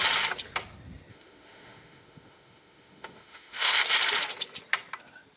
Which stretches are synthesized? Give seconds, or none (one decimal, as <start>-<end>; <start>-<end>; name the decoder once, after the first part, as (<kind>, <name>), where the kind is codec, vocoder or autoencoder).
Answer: 1.1-3.7 (autoencoder, DAC-VAE)